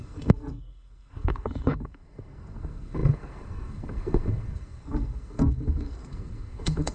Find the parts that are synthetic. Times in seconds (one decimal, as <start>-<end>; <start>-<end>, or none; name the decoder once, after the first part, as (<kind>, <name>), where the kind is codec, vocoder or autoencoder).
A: 0.0-6.9 (codec, SNAC)